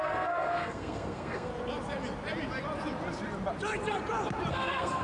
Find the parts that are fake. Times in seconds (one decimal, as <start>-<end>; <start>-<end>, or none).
0.0-1.5; 4.5-5.0